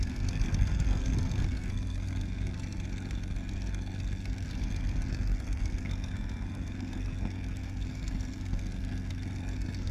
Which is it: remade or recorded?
remade